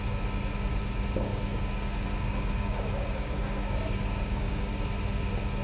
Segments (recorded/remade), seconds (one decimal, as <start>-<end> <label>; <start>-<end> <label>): 0.0-1.3 recorded; 1.3-4.7 remade; 4.7-5.6 recorded